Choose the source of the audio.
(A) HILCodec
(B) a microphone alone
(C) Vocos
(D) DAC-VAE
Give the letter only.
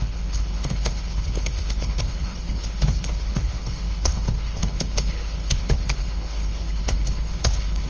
A